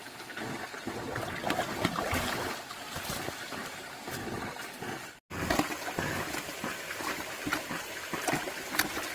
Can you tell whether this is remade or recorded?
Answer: recorded